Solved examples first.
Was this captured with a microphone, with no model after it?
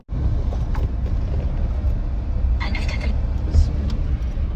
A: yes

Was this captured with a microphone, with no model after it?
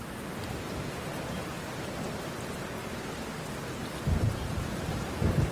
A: yes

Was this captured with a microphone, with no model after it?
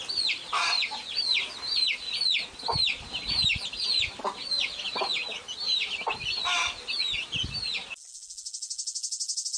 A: yes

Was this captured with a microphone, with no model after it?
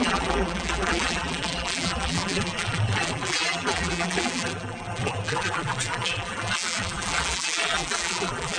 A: no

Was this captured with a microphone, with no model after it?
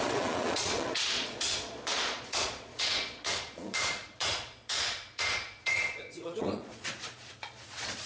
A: no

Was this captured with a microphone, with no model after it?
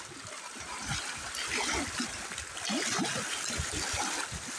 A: yes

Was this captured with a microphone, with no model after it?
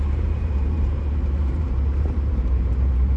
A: no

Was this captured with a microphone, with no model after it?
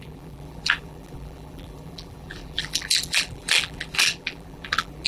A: no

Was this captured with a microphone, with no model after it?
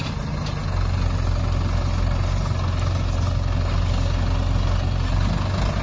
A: yes